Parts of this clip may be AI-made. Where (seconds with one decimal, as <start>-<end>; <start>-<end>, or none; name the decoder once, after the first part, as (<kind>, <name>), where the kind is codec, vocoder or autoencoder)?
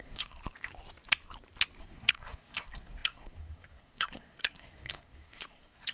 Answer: 0.0-0.4 (codec, SNAC); 1.8-5.9